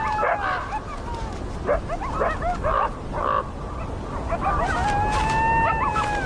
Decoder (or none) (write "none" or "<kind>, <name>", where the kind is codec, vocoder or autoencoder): none